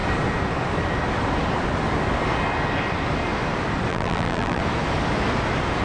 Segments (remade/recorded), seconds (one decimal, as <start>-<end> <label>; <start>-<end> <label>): 0.0-3.9 recorded; 3.9-4.6 remade; 4.6-5.8 recorded